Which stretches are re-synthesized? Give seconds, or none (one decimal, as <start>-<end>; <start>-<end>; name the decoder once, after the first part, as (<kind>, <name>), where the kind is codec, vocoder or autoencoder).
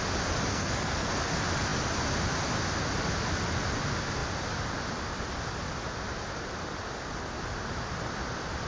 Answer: 0.5-1.1 (codec, SNAC)